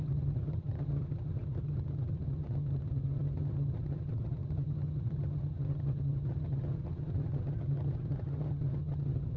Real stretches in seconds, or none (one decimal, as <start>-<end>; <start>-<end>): none